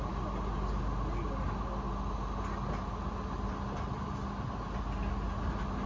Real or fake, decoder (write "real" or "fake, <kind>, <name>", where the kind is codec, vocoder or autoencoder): real